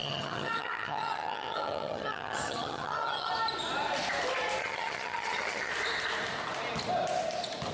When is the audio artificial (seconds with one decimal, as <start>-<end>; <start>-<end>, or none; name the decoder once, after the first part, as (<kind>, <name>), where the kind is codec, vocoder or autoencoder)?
0.0-3.3 (vocoder, HiFi-GAN); 4.6-5.7